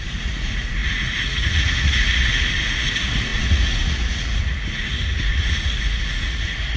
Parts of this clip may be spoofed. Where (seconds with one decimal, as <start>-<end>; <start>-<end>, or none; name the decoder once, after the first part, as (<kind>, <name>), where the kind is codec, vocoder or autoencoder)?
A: 0.0-6.8 (vocoder, Vocos)